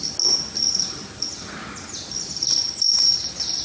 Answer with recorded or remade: recorded